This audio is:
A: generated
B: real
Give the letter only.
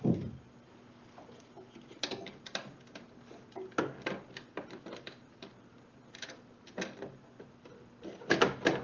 B